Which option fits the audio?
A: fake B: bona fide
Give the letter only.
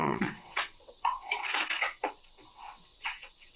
A